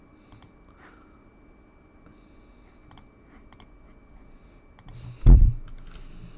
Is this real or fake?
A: real